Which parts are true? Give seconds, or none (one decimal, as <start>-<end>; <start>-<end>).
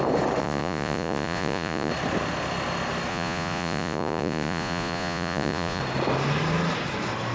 0.0-0.4; 1.9-3.1; 5.8-7.3